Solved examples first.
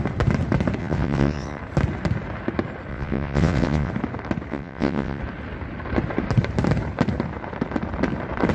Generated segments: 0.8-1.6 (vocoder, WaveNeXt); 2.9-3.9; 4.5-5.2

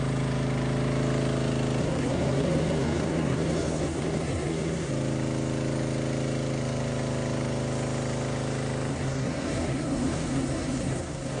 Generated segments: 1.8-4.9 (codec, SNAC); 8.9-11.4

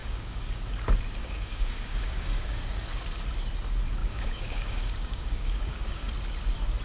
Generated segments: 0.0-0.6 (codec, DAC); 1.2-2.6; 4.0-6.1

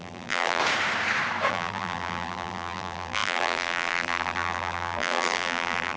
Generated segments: 0.0-0.6 (vocoder, BigVGAN v2); 1.5-6.0

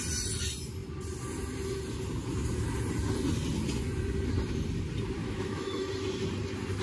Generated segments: 5.2-5.9 (autoencoder, DAC-VAE)

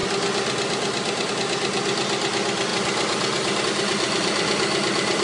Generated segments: none